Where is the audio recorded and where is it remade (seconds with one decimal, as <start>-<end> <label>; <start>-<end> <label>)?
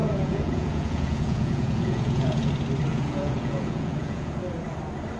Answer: 0.0-2.5 remade; 2.5-2.9 recorded; 2.9-4.4 remade; 4.4-5.2 recorded